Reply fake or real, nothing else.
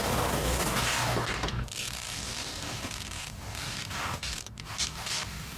fake